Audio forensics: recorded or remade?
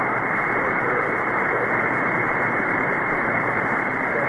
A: remade